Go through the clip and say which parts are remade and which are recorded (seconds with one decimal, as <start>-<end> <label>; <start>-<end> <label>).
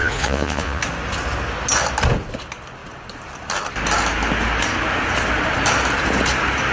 0.0-0.8 remade; 0.8-6.7 recorded